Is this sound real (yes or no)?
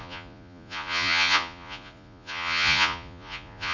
no